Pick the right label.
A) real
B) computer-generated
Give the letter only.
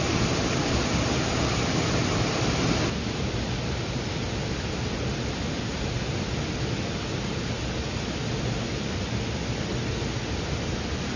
A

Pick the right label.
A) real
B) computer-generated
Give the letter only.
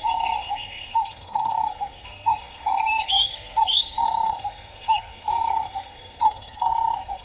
B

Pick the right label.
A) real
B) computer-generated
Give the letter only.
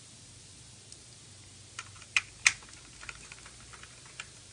A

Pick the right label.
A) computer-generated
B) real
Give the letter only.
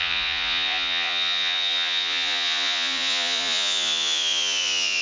A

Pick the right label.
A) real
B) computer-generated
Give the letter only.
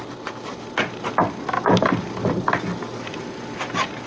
A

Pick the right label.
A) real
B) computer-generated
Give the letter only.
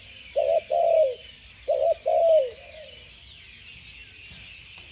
A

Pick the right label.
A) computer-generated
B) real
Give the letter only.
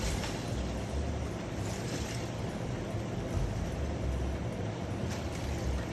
B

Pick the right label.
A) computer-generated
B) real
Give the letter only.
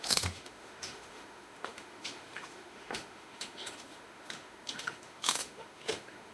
A